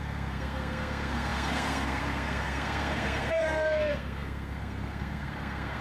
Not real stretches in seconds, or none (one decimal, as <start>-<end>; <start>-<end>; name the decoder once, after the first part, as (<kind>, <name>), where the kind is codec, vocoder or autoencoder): 0.0-5.8 (codec, SNAC)